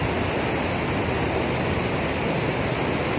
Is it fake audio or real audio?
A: real